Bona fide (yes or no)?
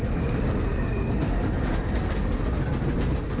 yes